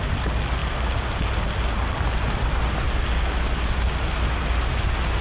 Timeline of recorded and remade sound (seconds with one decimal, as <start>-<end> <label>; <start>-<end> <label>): 0.0-5.2 recorded